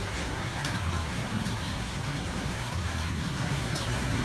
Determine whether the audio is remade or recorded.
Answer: remade